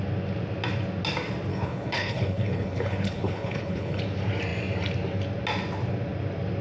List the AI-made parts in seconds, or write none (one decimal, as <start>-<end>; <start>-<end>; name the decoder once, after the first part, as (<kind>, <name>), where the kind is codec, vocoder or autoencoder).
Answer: 1.5-4.0 (codec, HILCodec)